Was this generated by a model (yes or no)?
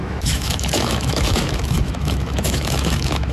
yes